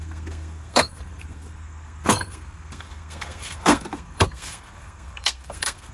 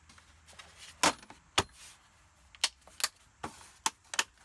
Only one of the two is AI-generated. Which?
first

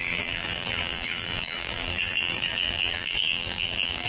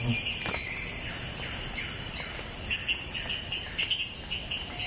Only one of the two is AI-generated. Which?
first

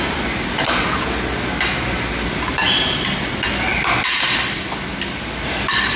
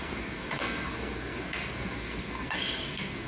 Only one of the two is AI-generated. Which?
second